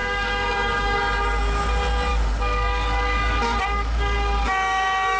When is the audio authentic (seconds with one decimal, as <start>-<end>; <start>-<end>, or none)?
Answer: 1.0-2.1